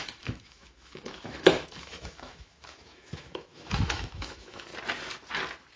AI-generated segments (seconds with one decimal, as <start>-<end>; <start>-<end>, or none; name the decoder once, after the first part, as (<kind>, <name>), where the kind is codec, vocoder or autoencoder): 0.0-4.7 (autoencoder, DAC-VAE)

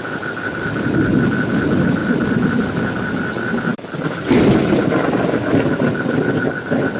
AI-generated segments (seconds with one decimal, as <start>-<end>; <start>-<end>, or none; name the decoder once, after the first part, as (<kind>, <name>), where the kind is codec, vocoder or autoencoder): none

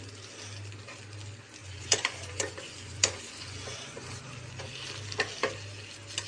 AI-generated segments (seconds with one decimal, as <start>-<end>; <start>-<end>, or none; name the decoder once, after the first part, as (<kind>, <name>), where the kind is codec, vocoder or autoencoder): 1.6-4.7 (vocoder, Vocos)

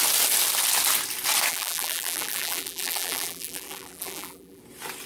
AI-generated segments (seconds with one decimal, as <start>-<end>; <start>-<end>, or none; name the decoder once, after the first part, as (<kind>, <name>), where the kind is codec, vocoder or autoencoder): 1.5-4.6 (vocoder, BigVGAN v2)